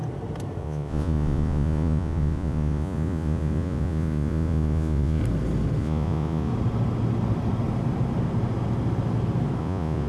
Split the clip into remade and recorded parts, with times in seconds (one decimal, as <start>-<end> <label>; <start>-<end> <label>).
0.0-0.6 recorded; 0.6-5.2 remade; 5.2-5.8 recorded; 5.8-6.5 remade; 6.5-9.6 recorded; 9.6-10.1 remade

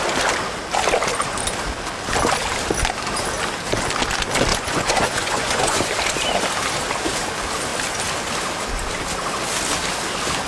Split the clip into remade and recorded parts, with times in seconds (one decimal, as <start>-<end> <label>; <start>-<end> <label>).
0.0-4.5 recorded; 4.5-5.9 remade; 5.9-10.5 recorded